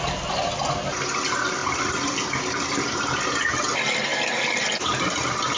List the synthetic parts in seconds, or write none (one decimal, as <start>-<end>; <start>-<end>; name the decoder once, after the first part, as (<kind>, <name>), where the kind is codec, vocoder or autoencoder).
1.6-2.7 (vocoder, BigVGAN v2)